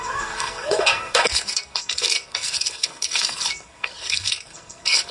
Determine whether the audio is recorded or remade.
remade